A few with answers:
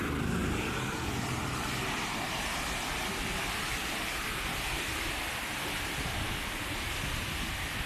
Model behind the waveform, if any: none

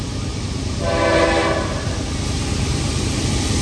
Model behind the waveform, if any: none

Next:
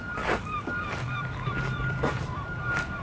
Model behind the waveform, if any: vocoder, BigVGAN v2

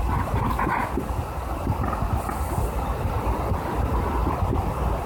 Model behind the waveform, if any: none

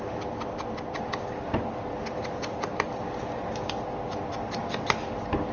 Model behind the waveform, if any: none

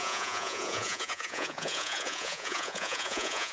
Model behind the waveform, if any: vocoder, Vocos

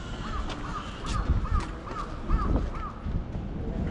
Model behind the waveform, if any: none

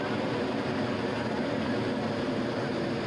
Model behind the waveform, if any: none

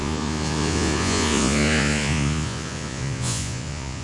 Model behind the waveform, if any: vocoder, Vocos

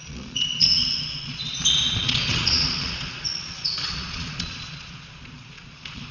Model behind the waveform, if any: vocoder, Vocos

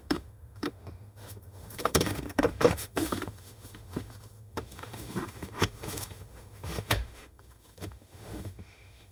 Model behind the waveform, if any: autoencoder, DAC-VAE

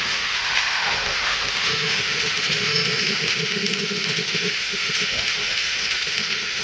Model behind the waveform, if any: autoencoder, DAC-VAE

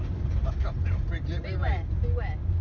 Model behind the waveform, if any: none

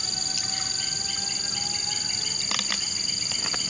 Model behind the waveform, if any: none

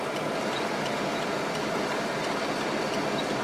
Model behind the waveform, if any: none